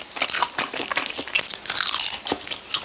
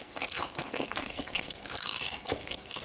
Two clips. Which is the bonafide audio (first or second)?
first